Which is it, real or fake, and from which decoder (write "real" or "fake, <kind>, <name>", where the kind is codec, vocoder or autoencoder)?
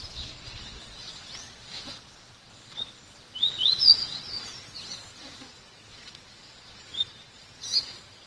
fake, vocoder, Vocos